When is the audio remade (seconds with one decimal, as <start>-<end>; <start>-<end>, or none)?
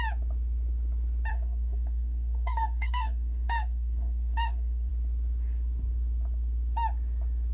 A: 1.3-4.9